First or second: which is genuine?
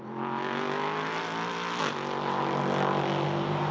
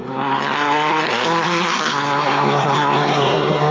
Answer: first